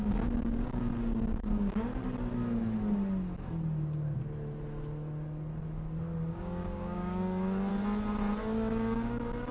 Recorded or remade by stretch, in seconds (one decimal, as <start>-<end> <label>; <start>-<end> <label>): 0.0-1.9 remade; 1.9-6.3 recorded; 6.3-7.7 remade; 7.7-8.4 recorded; 8.4-9.5 remade